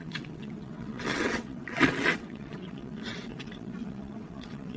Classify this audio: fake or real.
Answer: fake